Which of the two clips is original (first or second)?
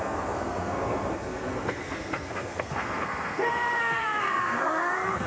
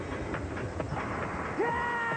second